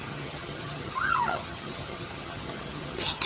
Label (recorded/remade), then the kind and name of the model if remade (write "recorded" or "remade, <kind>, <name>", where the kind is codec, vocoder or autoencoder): remade, vocoder, HiFi-GAN